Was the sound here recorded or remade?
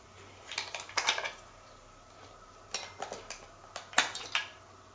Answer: recorded